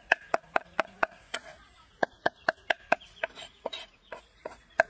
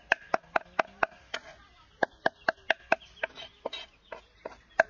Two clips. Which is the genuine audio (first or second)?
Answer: second